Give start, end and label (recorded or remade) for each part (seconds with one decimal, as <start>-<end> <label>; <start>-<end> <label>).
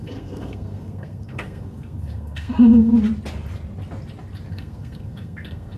0.0-2.9 remade; 2.9-4.5 recorded; 4.5-5.8 remade